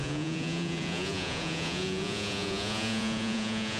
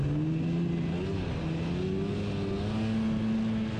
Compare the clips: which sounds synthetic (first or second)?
first